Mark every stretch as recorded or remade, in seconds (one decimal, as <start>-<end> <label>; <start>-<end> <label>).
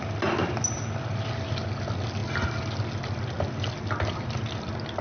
0.0-5.0 recorded